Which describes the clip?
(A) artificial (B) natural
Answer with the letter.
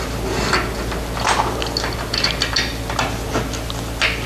B